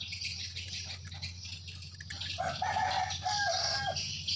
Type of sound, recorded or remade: recorded